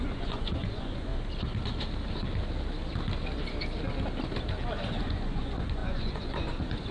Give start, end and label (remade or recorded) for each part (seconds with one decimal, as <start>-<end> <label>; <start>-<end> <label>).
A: 0.0-1.1 remade; 1.1-5.0 recorded; 5.0-6.9 remade